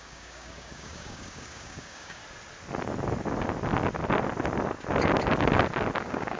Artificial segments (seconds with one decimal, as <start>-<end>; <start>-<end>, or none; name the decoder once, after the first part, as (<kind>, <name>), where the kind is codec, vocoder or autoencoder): 0.0-2.2 (codec, DAC); 6.0-6.4